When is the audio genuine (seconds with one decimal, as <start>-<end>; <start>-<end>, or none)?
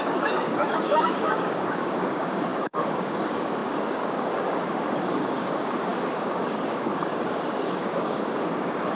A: none